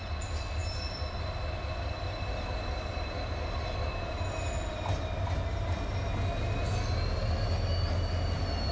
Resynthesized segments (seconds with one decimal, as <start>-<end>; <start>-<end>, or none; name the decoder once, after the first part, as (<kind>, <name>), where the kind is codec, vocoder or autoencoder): none

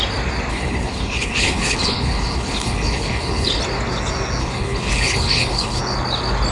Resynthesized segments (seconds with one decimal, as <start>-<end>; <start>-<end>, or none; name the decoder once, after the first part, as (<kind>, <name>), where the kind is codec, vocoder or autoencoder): 0.5-3.6 (codec, HILCodec); 4.4-5.8

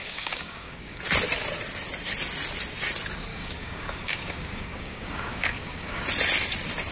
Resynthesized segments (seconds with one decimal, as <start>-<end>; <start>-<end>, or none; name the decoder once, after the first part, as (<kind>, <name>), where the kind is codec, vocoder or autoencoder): 0.0-1.0 (codec, DAC); 3.3-6.0

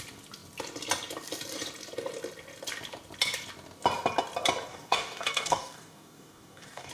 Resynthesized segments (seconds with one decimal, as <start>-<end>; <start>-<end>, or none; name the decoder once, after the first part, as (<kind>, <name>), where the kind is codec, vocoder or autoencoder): 4.7-6.9 (codec, DAC)

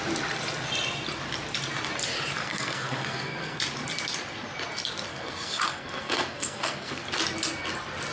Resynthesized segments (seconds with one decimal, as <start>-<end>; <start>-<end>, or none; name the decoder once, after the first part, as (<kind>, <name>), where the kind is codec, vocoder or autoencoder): 2.4-3.6 (codec, SNAC); 5.1-7.0

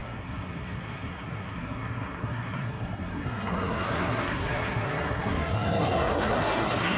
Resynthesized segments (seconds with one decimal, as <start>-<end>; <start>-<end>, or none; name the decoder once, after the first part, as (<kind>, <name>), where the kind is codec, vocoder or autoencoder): 0.0-7.0 (codec, SNAC)

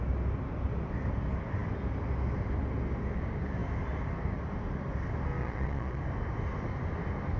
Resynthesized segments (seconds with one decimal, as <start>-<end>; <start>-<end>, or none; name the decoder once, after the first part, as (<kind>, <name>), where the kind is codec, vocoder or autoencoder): 5.4-6.0 (vocoder, Vocos)

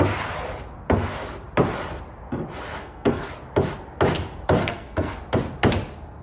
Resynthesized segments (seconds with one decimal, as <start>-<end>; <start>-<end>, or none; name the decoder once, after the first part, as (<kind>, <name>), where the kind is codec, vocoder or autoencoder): 2.8-3.3 (codec, SNAC); 4.6-5.2